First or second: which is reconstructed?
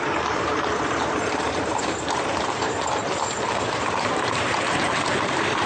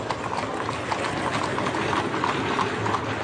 first